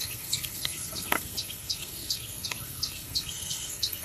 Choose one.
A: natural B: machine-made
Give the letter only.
B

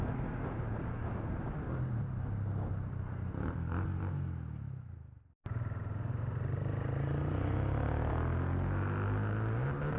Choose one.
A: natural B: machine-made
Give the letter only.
A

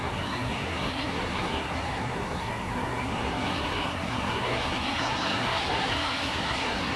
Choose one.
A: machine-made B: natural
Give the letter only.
A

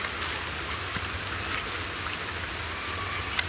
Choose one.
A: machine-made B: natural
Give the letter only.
B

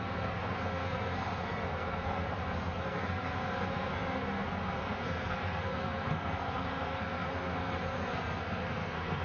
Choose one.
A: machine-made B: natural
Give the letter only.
A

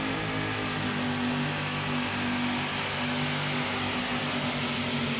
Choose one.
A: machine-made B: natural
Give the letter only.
B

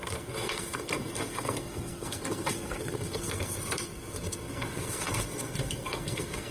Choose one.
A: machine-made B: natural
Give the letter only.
A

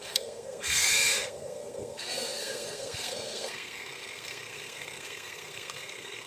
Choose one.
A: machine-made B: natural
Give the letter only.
A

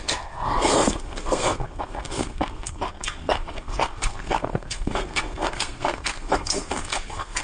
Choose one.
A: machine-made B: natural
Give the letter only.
A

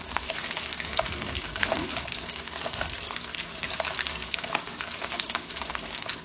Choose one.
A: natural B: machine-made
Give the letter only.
B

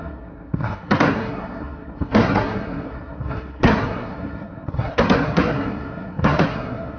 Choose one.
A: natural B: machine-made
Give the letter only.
B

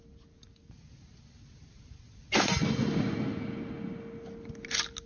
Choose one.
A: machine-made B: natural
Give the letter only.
B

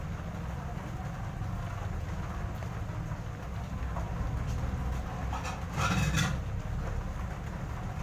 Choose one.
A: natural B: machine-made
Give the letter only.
A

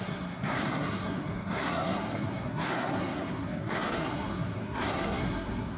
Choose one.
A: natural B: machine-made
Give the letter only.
B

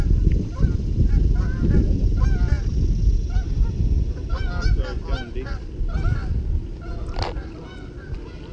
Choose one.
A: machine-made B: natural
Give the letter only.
B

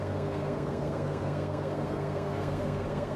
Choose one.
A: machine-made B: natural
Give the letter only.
A